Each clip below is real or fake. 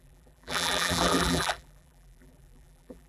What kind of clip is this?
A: fake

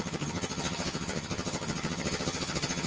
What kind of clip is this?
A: fake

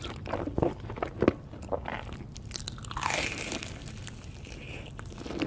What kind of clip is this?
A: real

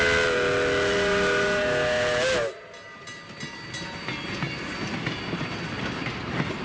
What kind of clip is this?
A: real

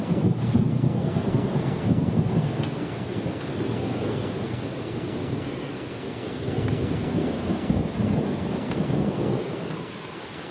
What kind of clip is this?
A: fake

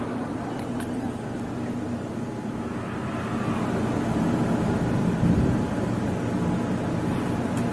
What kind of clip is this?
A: real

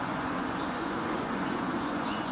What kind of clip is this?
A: fake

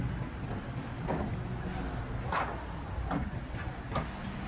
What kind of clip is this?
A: real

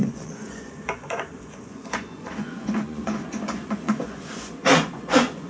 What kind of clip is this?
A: fake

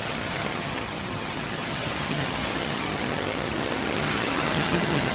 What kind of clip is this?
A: fake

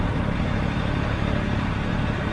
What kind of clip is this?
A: real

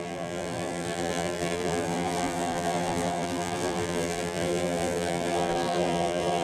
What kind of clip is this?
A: fake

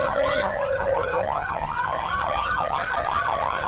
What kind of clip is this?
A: fake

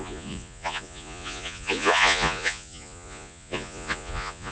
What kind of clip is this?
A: fake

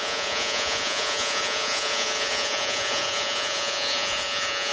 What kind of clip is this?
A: fake